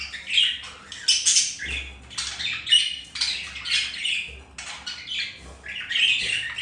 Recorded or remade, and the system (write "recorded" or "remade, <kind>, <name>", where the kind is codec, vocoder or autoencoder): recorded